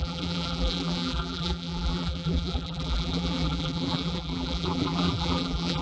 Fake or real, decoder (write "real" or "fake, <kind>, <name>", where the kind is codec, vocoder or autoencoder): fake, vocoder, BigVGAN v2